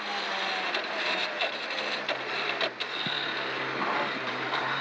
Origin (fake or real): real